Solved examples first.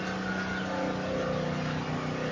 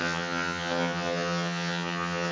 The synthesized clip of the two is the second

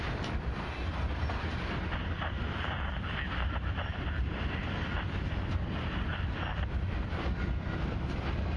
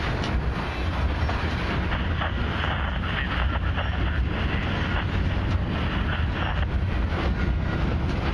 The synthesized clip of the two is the first